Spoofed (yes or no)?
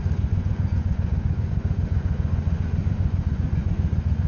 yes